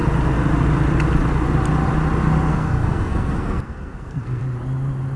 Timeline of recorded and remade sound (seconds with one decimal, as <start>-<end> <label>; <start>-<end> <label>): 0.0-2.5 recorded; 2.5-4.4 remade; 4.4-5.2 recorded